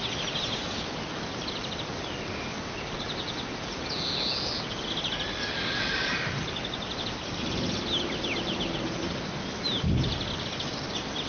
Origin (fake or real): real